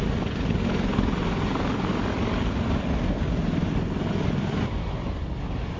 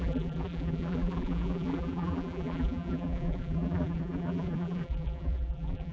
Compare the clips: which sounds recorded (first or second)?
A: first